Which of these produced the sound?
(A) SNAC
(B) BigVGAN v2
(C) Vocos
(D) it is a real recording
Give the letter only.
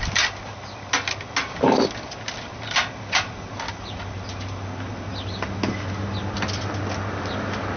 D